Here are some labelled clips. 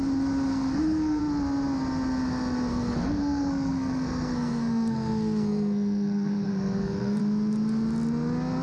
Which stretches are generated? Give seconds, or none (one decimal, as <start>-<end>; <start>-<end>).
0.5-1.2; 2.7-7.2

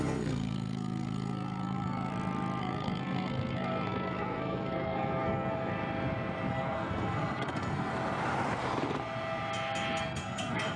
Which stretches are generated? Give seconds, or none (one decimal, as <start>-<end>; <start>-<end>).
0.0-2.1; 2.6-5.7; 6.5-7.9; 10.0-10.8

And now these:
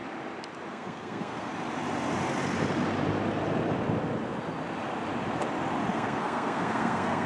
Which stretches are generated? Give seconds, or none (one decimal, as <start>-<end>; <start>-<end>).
0.7-1.5; 5.9-7.3

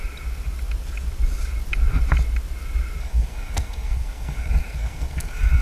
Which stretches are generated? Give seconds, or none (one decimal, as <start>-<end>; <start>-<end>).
3.0-5.6

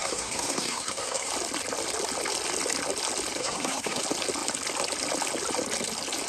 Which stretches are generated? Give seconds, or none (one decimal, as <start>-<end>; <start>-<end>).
0.0-1.3; 3.4-4.0

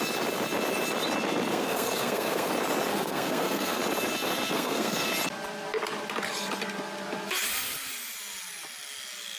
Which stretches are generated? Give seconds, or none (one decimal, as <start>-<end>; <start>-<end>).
1.5-2.5; 2.9-3.8; 4.5-5.1

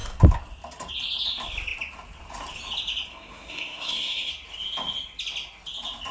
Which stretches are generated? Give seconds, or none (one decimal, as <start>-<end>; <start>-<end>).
3.1-4.3